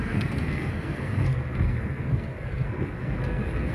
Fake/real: fake